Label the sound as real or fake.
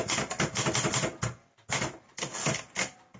real